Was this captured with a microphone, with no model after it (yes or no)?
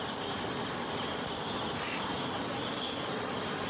yes